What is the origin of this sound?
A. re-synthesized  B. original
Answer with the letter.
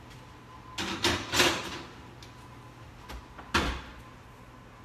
B